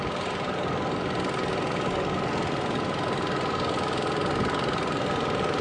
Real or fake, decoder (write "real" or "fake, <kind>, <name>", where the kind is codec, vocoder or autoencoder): real